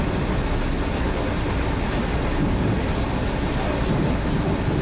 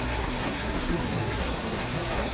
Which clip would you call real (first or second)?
first